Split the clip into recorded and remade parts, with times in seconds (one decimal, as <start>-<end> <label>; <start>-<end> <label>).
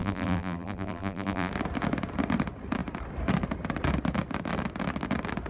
0.0-1.5 remade; 1.5-5.5 recorded